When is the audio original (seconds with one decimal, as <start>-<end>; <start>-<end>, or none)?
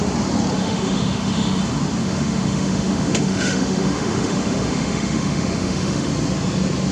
0.0-0.6; 1.6-2.0; 6.1-6.9